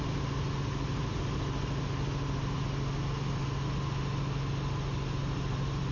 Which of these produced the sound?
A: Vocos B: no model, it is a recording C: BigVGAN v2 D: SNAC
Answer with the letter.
B